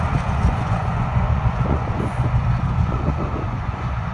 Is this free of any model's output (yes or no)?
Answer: no